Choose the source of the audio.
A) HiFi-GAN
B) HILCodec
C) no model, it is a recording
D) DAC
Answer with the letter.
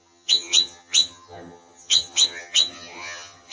A